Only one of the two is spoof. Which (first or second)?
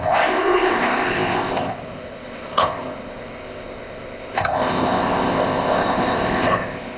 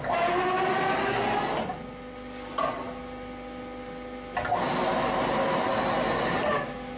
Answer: first